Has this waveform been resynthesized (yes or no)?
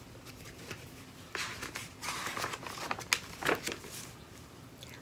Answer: no